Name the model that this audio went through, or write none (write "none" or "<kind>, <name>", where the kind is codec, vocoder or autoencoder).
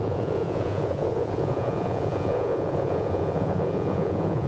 vocoder, Vocos